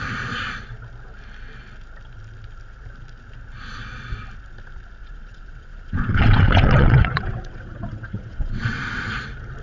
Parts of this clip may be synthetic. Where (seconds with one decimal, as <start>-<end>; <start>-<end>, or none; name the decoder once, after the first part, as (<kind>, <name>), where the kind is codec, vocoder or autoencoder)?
5.0-8.8 (vocoder, WaveNeXt)